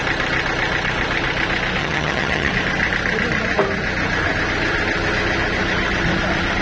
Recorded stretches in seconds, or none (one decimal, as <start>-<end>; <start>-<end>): 0.0-1.8; 2.5-6.6